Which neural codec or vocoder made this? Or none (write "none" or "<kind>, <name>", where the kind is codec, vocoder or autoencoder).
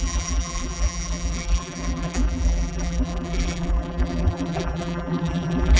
vocoder, BigVGAN v2